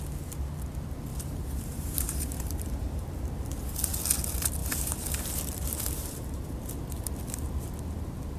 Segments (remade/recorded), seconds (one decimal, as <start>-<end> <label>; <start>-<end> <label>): 0.0-1.1 recorded; 1.1-3.2 remade; 3.2-4.6 recorded; 4.6-7.0 remade; 7.0-8.4 recorded